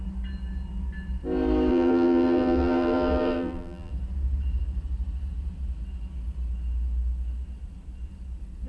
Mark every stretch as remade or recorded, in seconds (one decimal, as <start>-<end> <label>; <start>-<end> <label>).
0.0-1.7 recorded; 1.7-3.9 remade; 3.9-8.7 recorded